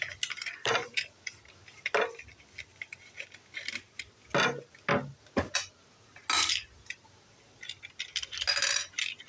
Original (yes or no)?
yes